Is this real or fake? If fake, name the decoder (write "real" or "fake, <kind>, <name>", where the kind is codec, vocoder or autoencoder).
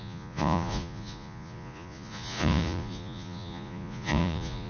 fake, vocoder, Vocos